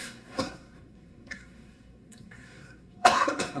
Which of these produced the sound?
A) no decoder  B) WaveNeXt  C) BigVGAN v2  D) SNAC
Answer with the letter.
D